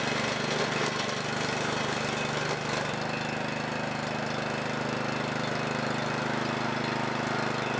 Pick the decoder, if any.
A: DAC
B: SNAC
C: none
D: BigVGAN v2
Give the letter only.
C